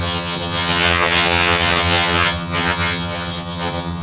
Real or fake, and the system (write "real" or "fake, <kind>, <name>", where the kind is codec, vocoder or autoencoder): fake, vocoder, HiFi-GAN